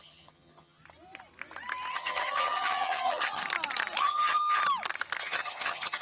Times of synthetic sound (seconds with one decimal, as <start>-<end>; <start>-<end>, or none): 0.0-0.8; 1.9-3.4; 4.0-4.6; 5.2-6.0